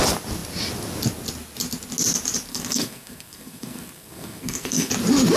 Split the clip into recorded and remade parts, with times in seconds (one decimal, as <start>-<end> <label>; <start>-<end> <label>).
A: 0.0-2.5 recorded; 2.5-4.9 remade; 4.9-5.4 recorded